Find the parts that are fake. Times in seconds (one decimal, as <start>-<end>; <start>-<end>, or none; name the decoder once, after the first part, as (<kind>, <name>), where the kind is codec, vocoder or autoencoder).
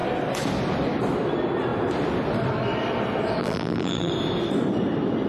3.4-4.1 (vocoder, BigVGAN v2)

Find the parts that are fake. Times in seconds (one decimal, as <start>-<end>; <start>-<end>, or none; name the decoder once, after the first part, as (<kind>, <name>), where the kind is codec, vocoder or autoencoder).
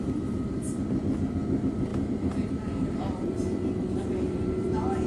1.9-5.1 (vocoder, BigVGAN v2)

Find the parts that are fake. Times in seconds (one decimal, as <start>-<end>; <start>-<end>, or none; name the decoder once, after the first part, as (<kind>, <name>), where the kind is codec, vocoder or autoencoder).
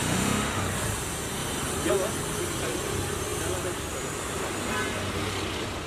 0.0-0.6 (autoencoder, DAC-VAE)